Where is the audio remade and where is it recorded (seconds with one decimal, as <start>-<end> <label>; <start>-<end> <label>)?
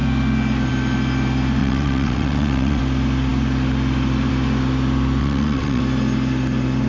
0.0-1.6 recorded; 1.6-2.8 remade; 2.8-5.2 recorded; 5.2-5.8 remade; 5.8-6.9 recorded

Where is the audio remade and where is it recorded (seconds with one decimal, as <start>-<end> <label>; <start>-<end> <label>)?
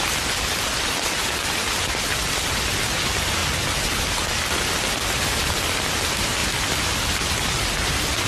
0.0-6.4 recorded; 6.4-7.3 remade; 7.3-8.3 recorded